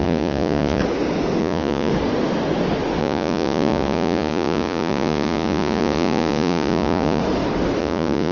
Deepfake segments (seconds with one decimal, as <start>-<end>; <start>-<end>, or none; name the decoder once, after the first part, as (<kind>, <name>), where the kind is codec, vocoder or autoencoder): 0.0-0.8 (vocoder, Vocos); 1.4-1.9; 3.0-7.2; 7.8-8.3